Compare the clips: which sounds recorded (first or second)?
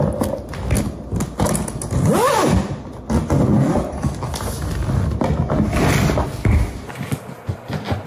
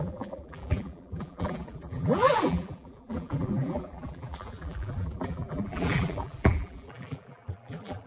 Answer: first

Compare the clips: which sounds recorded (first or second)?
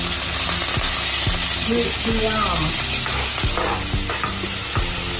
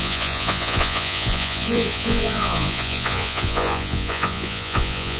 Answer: first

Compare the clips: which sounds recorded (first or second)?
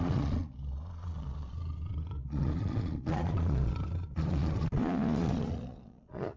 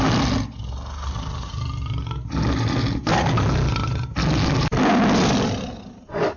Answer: second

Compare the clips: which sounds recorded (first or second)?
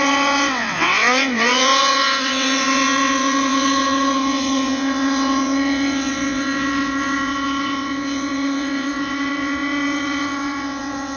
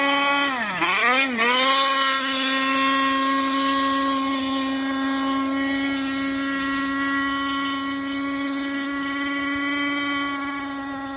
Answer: second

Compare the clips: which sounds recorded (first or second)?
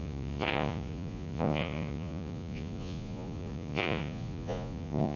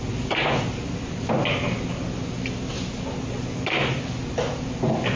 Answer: second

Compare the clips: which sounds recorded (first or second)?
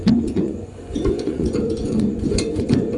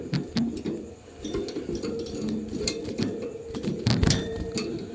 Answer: second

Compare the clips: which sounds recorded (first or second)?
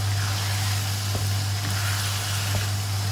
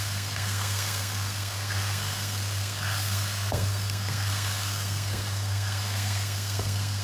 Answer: first